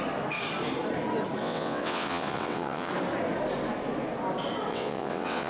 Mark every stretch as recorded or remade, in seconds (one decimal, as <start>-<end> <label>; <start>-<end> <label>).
0.0-1.4 recorded; 1.4-2.9 remade; 2.9-4.7 recorded; 4.7-5.5 remade